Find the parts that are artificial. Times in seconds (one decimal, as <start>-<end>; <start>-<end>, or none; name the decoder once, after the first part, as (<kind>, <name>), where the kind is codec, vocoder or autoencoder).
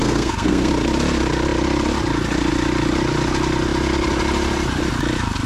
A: 0.0-0.7 (codec, SNAC)